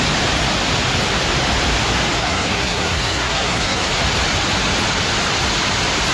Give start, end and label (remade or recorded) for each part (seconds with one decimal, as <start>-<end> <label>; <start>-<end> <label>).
0.0-2.2 recorded; 2.2-3.9 remade; 3.9-6.1 recorded